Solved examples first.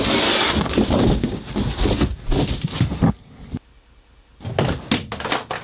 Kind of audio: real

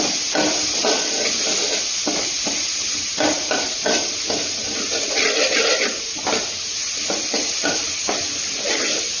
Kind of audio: real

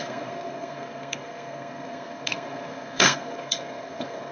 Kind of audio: fake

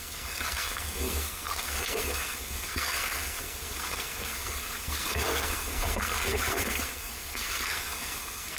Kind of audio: fake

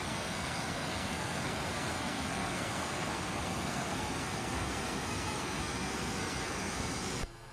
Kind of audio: fake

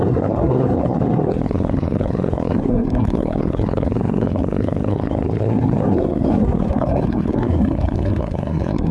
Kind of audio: fake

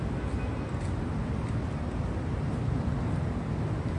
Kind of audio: real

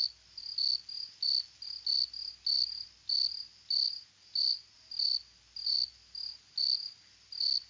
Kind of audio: real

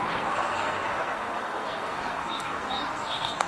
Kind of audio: fake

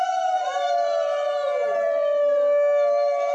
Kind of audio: real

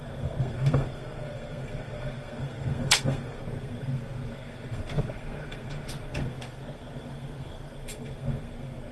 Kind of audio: fake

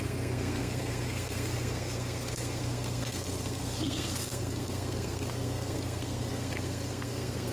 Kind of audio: fake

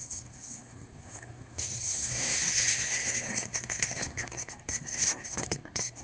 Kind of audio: fake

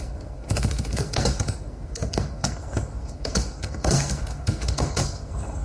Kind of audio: fake